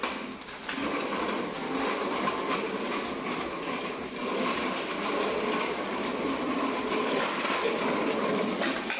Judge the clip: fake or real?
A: real